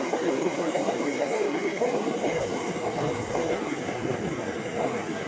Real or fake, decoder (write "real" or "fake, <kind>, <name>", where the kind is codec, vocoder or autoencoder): fake, codec, SNAC